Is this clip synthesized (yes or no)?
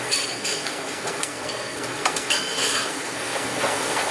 yes